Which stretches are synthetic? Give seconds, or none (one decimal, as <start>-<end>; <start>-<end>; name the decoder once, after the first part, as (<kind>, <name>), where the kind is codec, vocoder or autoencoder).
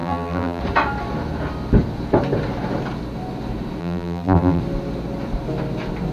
0.0-0.6 (vocoder, BigVGAN v2); 3.8-4.6